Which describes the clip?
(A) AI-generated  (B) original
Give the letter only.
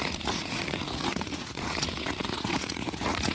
A